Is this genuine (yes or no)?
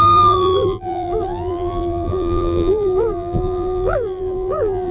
no